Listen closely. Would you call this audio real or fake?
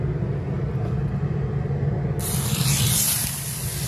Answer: real